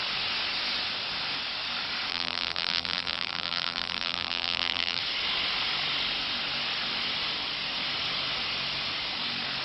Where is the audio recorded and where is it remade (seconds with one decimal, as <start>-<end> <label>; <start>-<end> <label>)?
0.0-2.1 recorded; 2.1-5.0 remade; 5.0-9.6 recorded